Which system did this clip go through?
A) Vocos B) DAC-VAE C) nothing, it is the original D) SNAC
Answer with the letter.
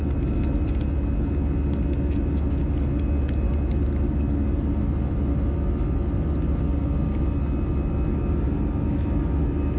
C